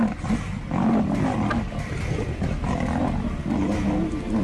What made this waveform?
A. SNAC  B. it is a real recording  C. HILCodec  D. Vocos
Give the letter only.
B